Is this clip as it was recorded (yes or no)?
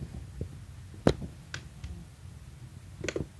yes